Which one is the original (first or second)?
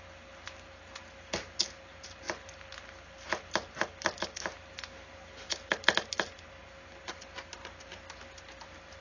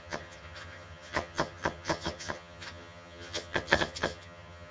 first